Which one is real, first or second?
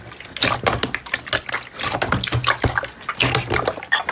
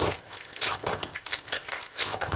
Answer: first